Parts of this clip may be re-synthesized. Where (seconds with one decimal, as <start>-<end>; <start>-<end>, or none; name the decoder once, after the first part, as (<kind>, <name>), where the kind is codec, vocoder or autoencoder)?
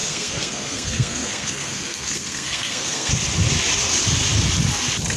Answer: 0.0-3.1 (codec, SNAC)